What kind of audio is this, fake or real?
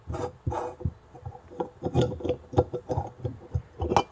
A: real